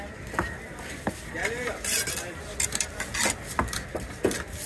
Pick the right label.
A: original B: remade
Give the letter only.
A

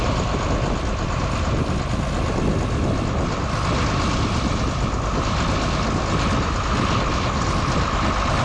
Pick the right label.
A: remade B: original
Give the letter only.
B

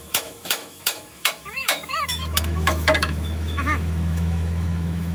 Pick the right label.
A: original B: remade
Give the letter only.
B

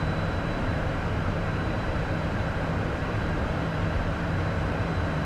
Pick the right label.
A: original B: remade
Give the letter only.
B